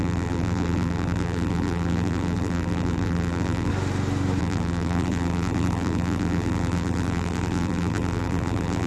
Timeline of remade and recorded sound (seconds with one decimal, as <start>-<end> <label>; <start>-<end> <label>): 0.0-3.7 remade; 3.7-4.4 recorded; 4.4-8.9 remade